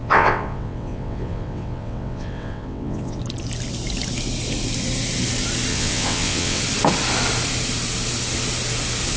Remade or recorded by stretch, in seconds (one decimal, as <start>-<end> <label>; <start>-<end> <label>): 0.0-3.2 remade; 3.2-5.7 recorded; 5.7-6.6 remade; 6.6-9.2 recorded